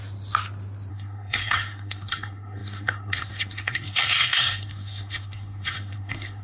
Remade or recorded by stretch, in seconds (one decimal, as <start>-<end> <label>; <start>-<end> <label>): 0.0-0.9 recorded; 0.9-6.4 remade